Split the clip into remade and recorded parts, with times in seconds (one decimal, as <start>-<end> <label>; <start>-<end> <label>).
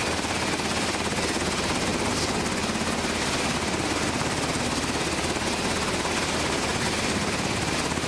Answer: 0.0-8.1 recorded